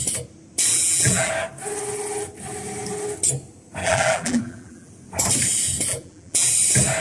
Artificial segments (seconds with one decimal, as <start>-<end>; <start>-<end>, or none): 0.7-1.3; 3.8-4.9; 5.9-6.5